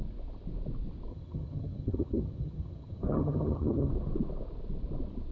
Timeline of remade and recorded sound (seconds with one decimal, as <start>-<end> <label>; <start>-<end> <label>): 0.0-1.1 recorded; 1.1-3.9 remade; 3.9-5.3 recorded